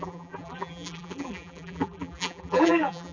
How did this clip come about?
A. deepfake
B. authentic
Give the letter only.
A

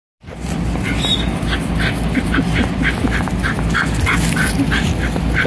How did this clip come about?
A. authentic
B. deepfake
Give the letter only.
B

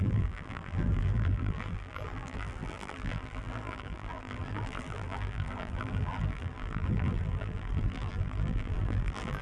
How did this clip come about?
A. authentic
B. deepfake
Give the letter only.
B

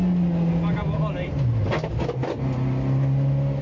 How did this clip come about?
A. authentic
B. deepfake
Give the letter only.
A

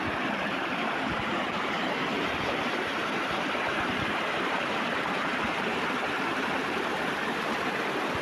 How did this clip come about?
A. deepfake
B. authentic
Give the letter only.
A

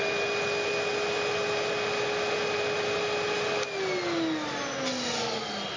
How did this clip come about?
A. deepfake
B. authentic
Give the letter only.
B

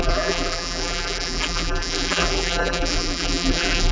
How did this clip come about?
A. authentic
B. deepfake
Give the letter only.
B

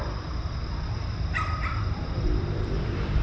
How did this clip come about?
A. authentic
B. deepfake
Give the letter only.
B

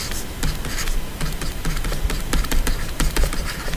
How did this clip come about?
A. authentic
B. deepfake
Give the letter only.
B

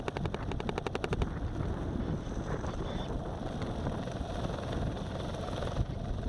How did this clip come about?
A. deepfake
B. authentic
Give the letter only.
A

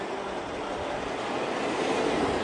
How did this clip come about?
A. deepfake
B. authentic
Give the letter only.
B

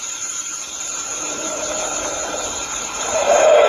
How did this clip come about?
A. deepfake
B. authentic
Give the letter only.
A